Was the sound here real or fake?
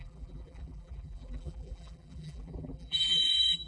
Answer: fake